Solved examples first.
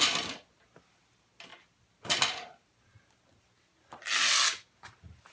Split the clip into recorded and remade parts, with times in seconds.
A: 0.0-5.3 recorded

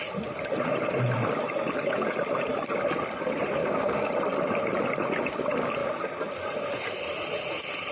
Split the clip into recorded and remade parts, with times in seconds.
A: 0.0-3.6 recorded; 3.6-4.1 remade; 4.1-7.9 recorded